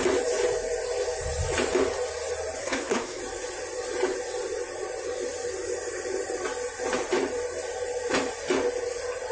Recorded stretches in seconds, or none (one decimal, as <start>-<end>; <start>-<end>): 0.0-2.6; 3.2-9.3